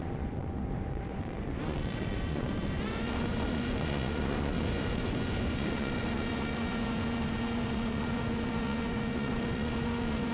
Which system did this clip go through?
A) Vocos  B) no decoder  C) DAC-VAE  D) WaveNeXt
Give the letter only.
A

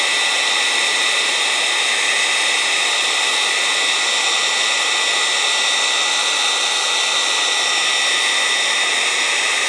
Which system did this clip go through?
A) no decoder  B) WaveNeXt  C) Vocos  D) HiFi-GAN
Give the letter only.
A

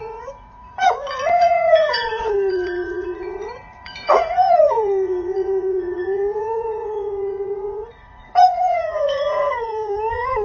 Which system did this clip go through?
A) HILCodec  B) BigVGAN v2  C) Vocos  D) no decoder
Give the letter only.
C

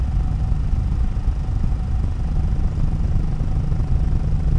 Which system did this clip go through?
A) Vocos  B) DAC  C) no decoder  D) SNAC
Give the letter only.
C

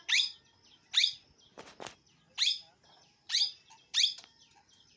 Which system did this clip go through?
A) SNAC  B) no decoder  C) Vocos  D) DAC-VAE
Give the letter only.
B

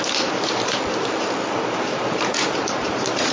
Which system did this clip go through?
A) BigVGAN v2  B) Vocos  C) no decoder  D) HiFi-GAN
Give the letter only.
C